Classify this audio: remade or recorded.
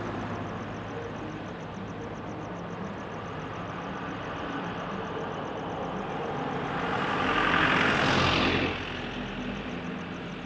recorded